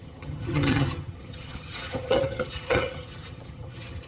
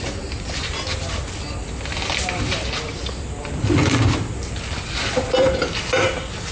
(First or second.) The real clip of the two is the second